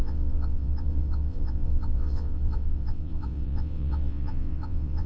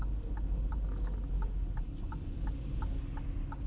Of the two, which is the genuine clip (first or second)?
second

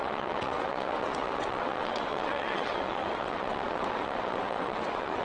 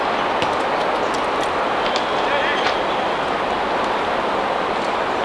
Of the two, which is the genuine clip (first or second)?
second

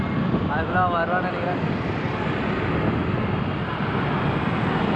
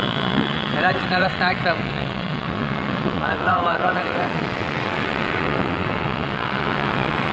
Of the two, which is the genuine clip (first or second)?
first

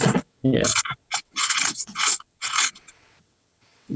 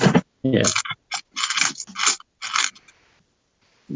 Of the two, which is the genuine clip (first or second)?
second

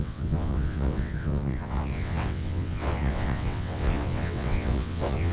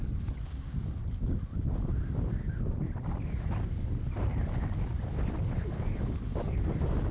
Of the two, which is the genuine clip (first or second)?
second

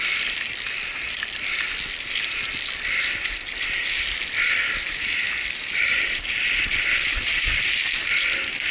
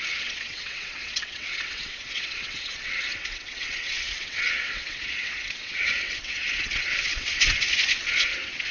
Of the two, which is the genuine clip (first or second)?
first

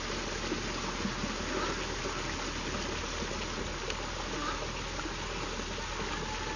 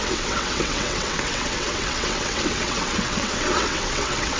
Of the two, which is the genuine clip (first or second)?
first